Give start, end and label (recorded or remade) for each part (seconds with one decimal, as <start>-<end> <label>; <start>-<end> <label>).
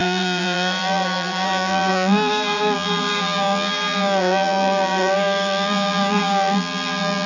0.0-7.3 remade